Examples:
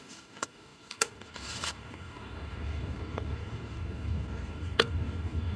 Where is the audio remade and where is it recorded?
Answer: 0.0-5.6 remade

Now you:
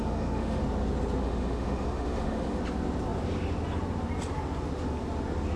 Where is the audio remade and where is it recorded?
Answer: 0.0-0.6 remade; 0.6-1.2 recorded; 1.2-2.6 remade; 2.6-5.6 recorded

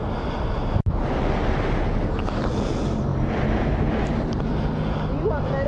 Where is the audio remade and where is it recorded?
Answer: 0.0-3.1 recorded; 3.1-4.5 remade; 4.5-5.7 recorded

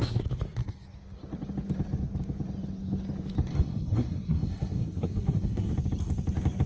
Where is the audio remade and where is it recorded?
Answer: 0.0-3.5 recorded; 3.5-5.7 remade; 5.7-6.7 recorded

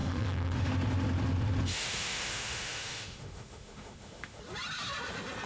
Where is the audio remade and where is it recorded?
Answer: 0.0-0.7 remade; 0.7-1.7 recorded; 1.7-4.4 remade; 4.4-5.5 recorded

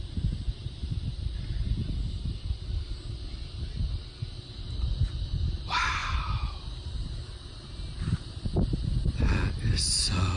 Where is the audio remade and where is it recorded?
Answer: 0.0-10.4 recorded